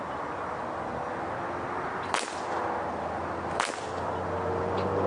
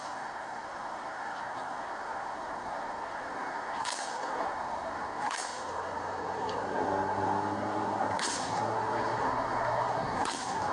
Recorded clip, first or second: first